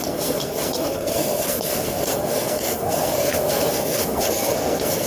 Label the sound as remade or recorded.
remade